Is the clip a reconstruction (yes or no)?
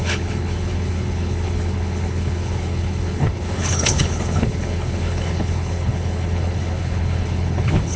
yes